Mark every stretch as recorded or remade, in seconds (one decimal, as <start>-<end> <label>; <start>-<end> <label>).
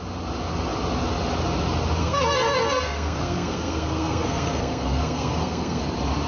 0.0-2.0 recorded; 2.0-5.8 remade; 5.8-6.3 recorded